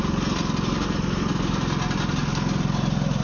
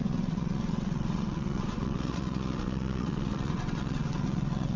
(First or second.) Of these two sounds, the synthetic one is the second